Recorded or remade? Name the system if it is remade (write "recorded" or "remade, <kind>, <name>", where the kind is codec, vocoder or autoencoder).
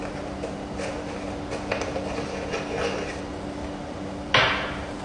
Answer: recorded